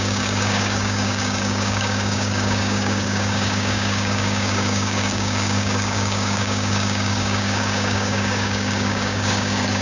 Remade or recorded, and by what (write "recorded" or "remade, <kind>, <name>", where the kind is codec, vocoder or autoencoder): remade, codec, DAC